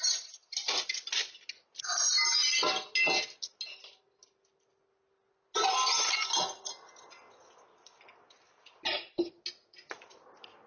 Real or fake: real